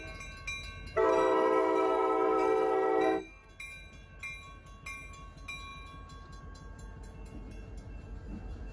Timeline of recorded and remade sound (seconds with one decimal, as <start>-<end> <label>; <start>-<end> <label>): 0.0-1.1 recorded; 1.1-3.5 remade; 3.5-8.7 recorded